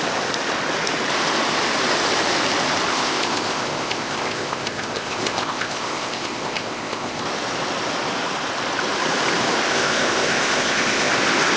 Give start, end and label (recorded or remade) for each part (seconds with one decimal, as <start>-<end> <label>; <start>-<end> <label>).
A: 0.0-2.9 recorded; 2.9-7.2 remade; 7.2-9.7 recorded; 9.7-11.1 remade; 11.1-11.6 recorded